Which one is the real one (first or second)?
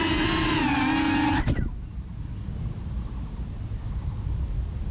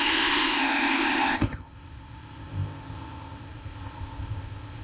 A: first